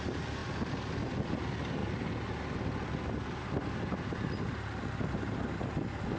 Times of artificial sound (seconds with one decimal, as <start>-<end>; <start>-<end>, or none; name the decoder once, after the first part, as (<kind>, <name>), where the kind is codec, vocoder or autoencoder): none

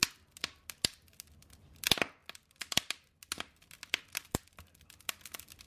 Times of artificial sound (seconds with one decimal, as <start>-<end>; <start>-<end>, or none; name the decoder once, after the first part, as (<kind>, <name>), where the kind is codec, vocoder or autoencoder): none